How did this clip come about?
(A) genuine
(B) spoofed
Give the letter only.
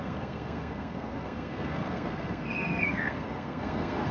B